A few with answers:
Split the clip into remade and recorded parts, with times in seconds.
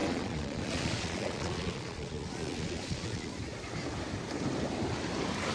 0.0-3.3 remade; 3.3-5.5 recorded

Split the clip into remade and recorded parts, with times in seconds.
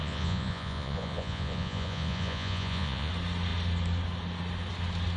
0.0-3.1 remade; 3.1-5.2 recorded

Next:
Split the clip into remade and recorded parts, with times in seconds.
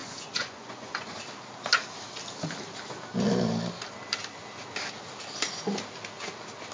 0.0-1.1 remade; 1.1-6.7 recorded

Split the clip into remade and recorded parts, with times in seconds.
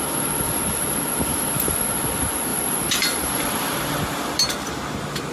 0.0-5.3 recorded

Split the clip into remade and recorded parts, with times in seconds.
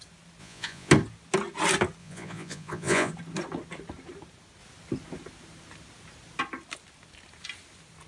0.0-0.4 recorded; 0.4-0.9 remade; 0.9-2.0 recorded; 2.0-3.1 remade; 3.1-8.1 recorded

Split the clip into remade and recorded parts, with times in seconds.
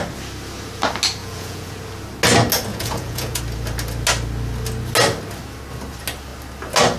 0.0-1.2 recorded; 1.2-1.7 remade; 1.7-2.7 recorded; 2.7-3.4 remade; 3.4-7.0 recorded